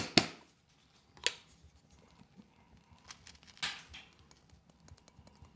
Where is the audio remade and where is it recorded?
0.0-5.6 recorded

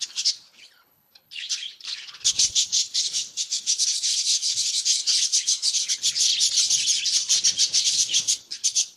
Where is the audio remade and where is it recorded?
0.0-6.3 remade; 6.3-7.8 recorded; 7.8-9.0 remade

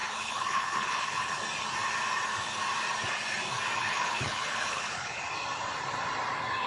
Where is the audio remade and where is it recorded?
0.0-1.4 remade; 1.4-3.8 recorded; 3.8-5.2 remade; 5.2-6.7 recorded

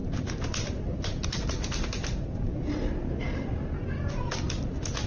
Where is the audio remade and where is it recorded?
0.0-3.1 remade; 3.1-5.1 recorded

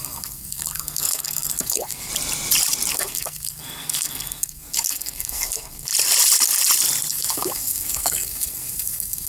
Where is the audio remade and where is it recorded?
0.0-2.1 remade; 2.1-2.9 recorded; 2.9-5.9 remade; 5.9-7.1 recorded; 7.1-9.3 remade

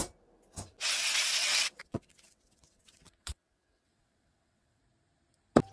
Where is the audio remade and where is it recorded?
0.0-1.4 recorded; 1.4-4.8 remade; 4.8-5.7 recorded